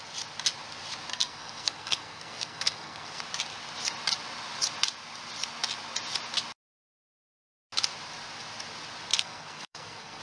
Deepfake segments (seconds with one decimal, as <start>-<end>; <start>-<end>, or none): 1.1-3.2; 9.1-10.2